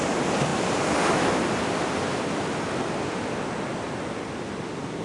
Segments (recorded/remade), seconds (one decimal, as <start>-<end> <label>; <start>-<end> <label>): 0.0-5.0 recorded